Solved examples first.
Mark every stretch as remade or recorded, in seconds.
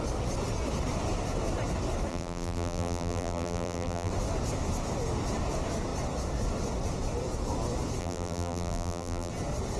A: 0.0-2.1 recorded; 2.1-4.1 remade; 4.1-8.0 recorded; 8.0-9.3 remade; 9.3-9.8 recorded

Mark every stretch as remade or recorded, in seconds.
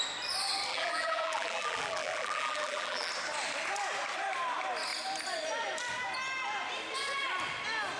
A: 0.0-0.7 recorded; 0.7-3.1 remade; 3.1-8.0 recorded